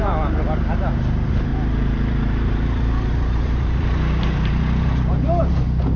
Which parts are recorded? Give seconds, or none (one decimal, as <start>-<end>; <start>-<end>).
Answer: 0.0-1.5; 4.5-6.0